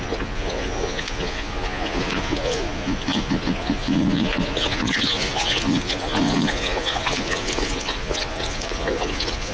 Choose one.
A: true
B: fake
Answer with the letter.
B